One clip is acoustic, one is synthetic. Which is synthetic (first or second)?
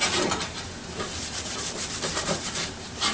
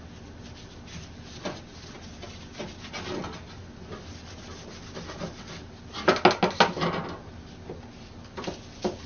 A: first